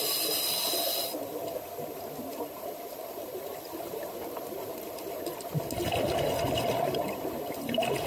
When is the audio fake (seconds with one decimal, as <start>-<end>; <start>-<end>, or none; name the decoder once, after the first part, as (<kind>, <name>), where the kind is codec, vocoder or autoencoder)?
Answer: 2.3-5.5 (vocoder, BigVGAN v2)